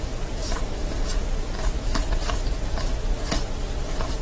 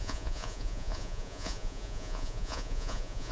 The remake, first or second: second